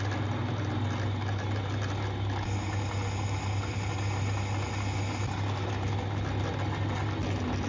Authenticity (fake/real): real